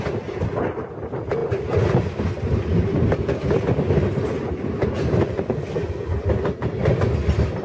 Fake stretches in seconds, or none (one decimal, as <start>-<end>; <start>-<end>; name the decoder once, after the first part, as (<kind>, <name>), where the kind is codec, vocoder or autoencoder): none